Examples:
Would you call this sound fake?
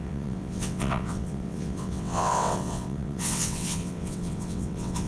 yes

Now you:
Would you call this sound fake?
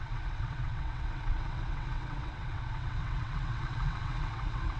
yes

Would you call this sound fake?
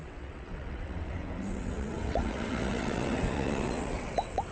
yes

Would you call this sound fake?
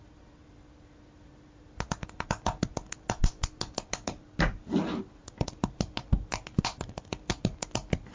no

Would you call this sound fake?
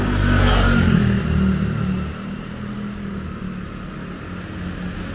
no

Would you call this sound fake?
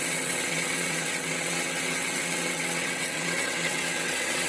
yes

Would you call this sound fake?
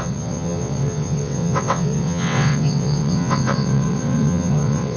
yes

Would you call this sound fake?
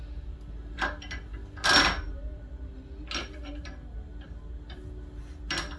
no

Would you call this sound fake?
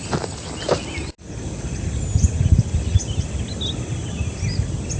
no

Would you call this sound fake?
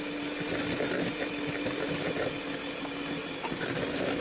no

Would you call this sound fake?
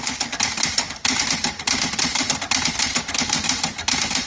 no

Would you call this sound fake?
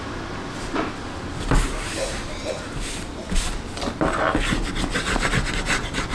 no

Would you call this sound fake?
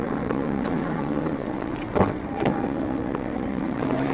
yes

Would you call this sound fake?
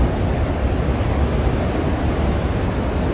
no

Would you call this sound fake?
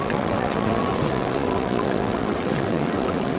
yes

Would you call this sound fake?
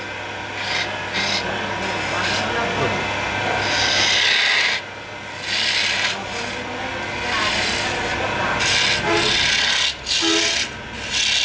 no